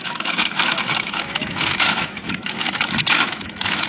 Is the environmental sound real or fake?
fake